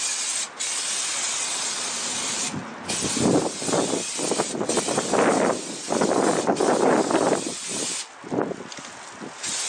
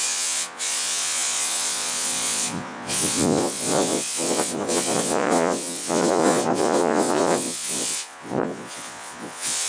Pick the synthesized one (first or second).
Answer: second